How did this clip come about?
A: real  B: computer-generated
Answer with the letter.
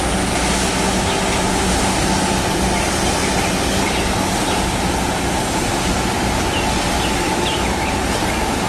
A